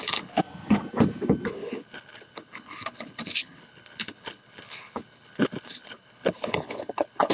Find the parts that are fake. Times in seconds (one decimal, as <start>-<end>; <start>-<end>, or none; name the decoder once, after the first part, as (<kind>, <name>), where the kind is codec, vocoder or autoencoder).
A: 0.0-0.4 (codec, HILCodec); 1.5-7.3